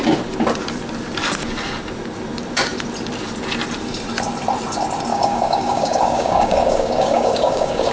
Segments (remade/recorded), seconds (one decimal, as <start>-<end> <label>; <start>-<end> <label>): 0.0-5.1 recorded; 5.1-7.9 remade